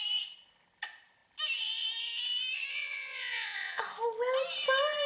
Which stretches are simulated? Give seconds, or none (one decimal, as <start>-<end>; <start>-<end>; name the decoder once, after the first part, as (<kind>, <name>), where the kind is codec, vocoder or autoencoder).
2.7-3.8 (vocoder, Vocos)